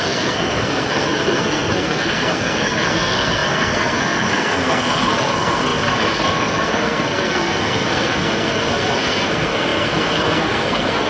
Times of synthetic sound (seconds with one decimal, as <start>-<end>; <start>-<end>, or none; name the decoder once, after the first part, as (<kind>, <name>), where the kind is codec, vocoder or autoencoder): 0.0-11.1 (codec, SNAC)